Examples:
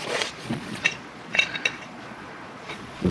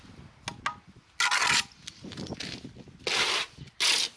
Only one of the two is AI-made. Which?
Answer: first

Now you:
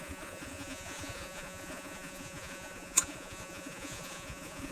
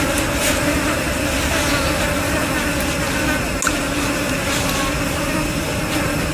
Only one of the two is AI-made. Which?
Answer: first